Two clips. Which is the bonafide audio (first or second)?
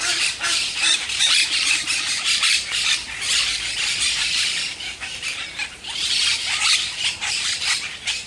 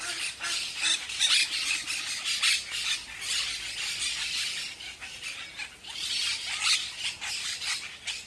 second